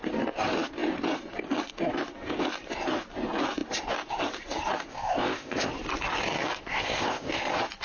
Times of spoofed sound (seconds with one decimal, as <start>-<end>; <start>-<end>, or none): 4.9-5.7; 6.7-7.3